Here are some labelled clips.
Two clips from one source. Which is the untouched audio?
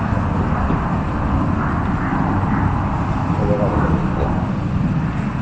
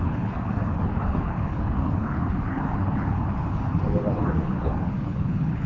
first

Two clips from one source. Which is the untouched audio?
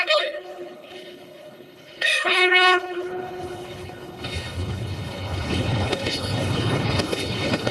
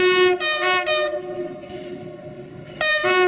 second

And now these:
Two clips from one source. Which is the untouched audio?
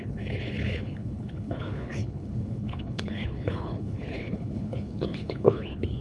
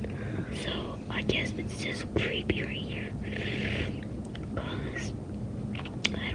second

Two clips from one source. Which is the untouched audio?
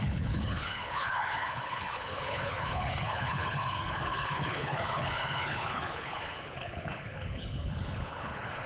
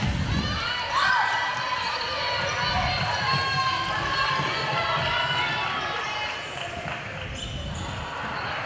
second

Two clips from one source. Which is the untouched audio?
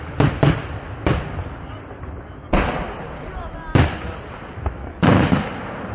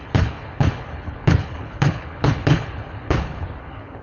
first